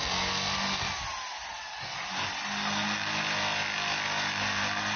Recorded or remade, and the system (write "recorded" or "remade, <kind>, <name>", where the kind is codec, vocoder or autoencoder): recorded